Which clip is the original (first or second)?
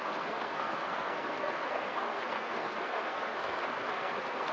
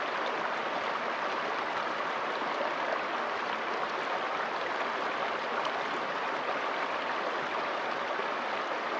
second